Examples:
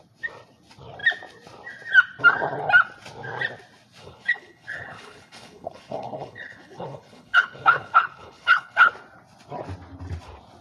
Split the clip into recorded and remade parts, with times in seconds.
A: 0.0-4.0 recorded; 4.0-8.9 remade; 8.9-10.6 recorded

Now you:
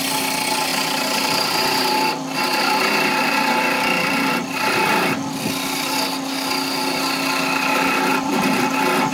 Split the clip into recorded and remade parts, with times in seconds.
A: 0.0-0.7 recorded; 0.7-5.3 remade; 5.3-8.1 recorded; 8.1-9.1 remade

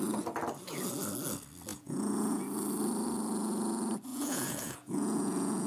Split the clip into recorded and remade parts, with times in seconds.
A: 0.0-1.7 recorded; 1.7-2.4 remade; 2.4-4.1 recorded; 4.1-5.7 remade